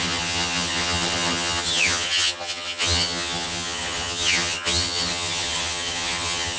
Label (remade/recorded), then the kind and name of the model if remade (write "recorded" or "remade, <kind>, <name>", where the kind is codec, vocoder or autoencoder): remade, vocoder, HiFi-GAN